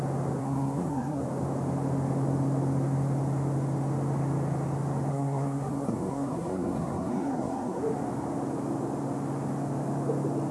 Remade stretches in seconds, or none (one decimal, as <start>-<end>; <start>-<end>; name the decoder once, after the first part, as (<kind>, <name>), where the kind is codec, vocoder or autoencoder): 0.4-1.2 (codec, SNAC); 5.1-7.8